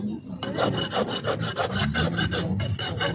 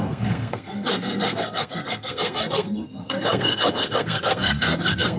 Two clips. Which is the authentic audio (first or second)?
first